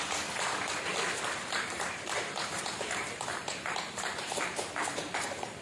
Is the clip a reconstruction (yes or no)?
yes